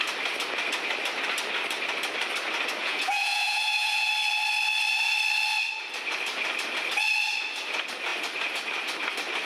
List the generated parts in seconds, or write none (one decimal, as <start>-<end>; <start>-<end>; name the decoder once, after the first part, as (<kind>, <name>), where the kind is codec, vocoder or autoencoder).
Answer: 2.8-4.1 (vocoder, Vocos)